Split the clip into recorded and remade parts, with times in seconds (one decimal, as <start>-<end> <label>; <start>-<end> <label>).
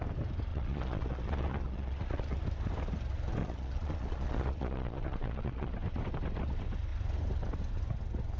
0.0-0.5 recorded; 0.5-2.4 remade; 2.4-3.4 recorded; 3.4-5.7 remade; 5.7-8.4 recorded